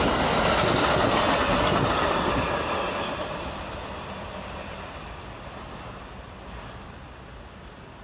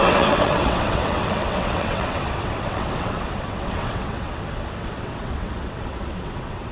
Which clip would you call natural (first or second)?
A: first